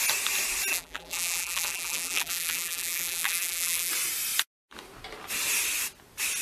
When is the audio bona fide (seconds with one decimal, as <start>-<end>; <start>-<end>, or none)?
0.0-0.7; 3.9-6.4